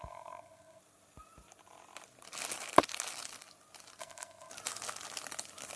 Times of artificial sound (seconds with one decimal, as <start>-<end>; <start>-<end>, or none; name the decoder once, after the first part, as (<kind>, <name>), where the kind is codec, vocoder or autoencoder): 0.0-0.8 (codec, SNAC); 4.0-4.5